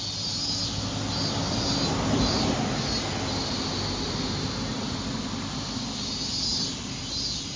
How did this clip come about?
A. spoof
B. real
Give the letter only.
B